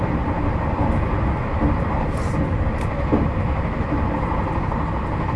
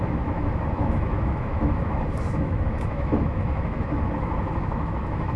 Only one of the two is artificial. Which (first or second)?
second